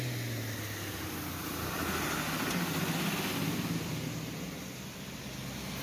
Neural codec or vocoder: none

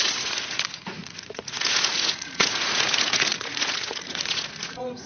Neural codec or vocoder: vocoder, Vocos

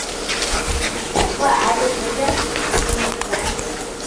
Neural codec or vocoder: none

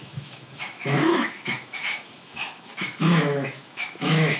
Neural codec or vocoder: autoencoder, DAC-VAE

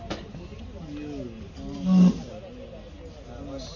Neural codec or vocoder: none